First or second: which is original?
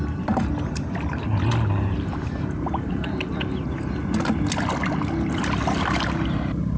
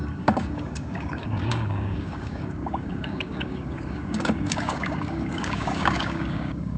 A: first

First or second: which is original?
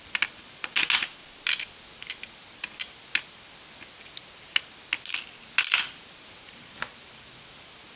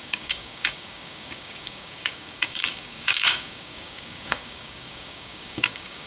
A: first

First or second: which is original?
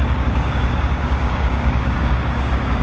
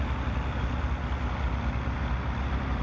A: second